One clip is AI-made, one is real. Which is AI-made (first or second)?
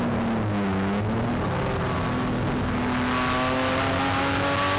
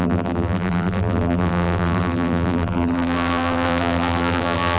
second